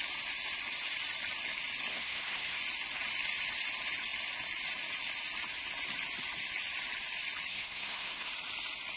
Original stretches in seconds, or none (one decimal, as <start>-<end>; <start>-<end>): 0.0-1.9; 2.6-7.5; 8.3-9.0